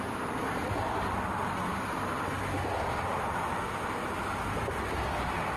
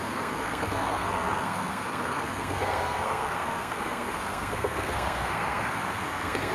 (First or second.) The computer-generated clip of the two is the second